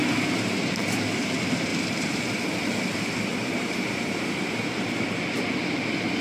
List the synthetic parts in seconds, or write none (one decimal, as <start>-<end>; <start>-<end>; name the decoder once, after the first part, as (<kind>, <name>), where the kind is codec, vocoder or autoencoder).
0.0-0.8 (vocoder, BigVGAN v2); 1.7-2.4; 3.4-4.6

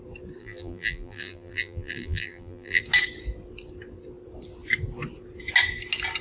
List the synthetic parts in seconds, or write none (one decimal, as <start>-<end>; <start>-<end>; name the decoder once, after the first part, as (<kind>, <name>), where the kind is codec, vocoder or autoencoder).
0.4-2.8 (vocoder, BigVGAN v2)

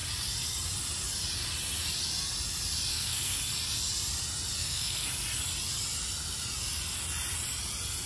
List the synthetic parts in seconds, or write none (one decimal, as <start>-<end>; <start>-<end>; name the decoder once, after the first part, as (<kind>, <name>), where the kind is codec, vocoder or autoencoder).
2.9-3.4 (codec, SNAC); 4.6-5.1

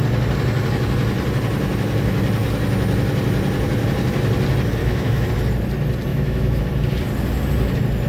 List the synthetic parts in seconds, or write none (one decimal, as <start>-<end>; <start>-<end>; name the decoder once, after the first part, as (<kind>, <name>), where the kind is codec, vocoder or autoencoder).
4.8-5.3 (autoencoder, DAC-VAE); 6.1-6.6